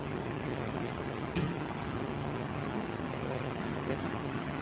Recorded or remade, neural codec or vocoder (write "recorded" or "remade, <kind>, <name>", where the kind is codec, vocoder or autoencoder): remade, vocoder, HiFi-GAN